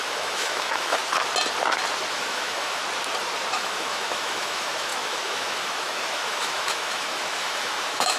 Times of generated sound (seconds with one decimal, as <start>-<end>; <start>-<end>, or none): 0.0-1.0; 2.1-2.8; 3.5-8.2